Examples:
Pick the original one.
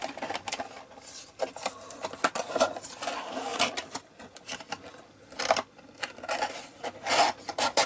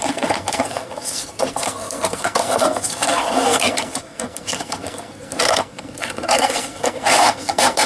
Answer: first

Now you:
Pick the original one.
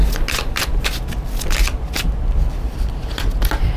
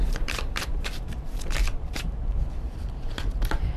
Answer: first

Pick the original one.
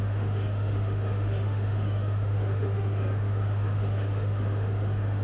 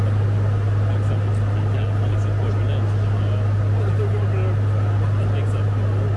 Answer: second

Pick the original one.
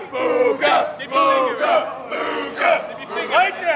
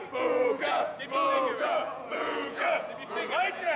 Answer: first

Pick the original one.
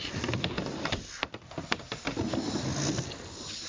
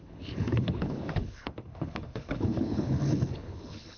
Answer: first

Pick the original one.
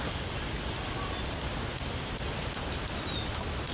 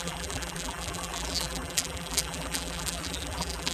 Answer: first